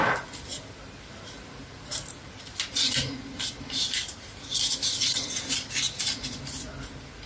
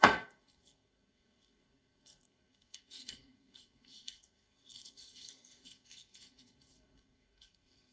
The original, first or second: first